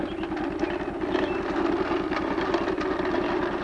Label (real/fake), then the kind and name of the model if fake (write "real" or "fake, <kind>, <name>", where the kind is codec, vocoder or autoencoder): real